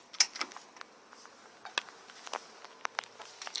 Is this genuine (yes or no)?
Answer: yes